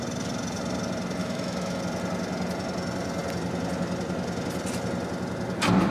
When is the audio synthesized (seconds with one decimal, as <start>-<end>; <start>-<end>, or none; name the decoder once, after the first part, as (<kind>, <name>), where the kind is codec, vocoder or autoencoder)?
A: 1.2-1.8 (autoencoder, DAC-VAE)